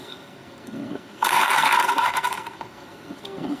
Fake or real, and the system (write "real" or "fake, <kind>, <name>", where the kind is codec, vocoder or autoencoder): fake, codec, SNAC